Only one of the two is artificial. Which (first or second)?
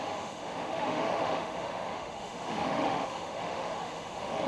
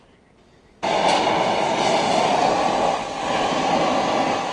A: first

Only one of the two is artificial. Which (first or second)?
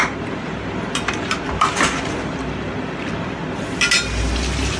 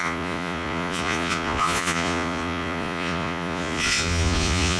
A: second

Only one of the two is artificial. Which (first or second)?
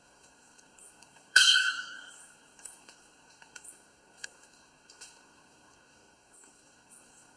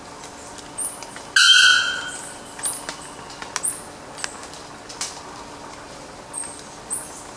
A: first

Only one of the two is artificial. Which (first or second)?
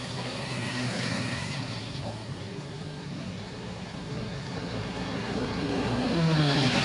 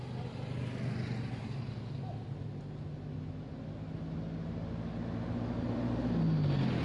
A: first